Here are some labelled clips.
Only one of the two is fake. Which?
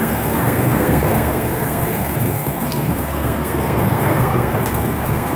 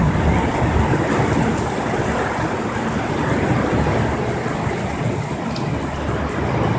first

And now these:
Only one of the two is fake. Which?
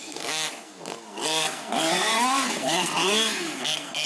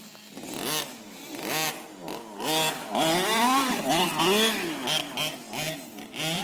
first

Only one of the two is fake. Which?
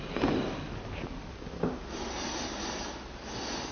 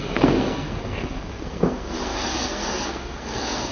second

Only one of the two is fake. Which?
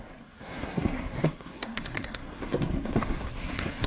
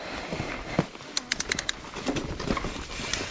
first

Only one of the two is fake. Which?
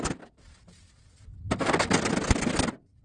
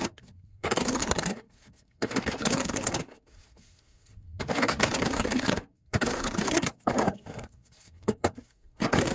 second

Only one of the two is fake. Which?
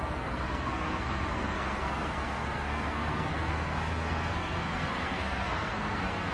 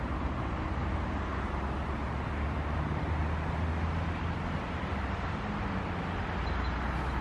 first